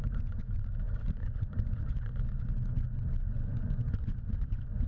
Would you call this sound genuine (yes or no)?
no